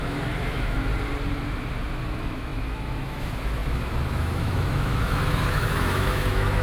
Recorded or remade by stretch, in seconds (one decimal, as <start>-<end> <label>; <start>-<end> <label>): 0.0-0.9 remade; 0.9-2.0 recorded; 2.0-6.6 remade